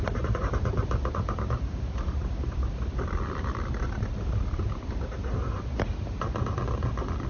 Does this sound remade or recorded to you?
recorded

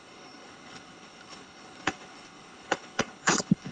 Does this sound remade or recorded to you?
remade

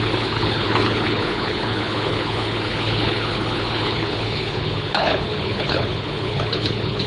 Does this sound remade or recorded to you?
remade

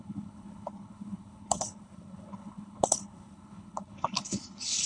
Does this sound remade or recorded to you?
remade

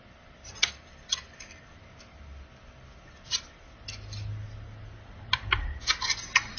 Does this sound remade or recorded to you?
recorded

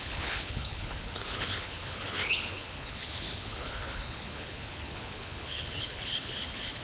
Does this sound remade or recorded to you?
remade